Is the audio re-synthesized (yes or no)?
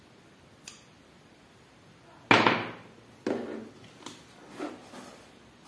no